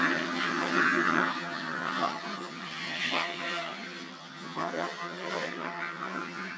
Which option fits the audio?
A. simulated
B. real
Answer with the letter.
A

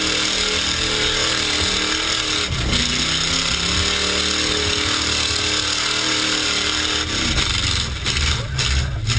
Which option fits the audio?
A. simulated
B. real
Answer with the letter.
B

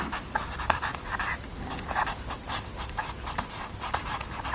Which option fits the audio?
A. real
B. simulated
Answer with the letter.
A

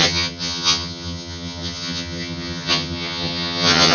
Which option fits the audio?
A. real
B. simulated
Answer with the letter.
B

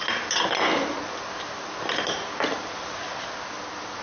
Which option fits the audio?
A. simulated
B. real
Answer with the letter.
B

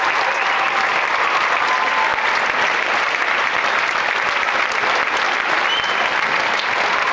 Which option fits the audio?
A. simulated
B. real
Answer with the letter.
B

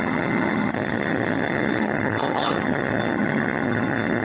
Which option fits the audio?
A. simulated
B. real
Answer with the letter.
A